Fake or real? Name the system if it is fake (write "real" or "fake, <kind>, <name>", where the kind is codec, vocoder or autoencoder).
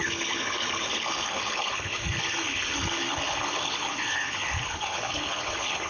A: fake, codec, HILCodec